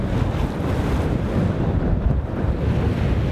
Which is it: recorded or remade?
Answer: recorded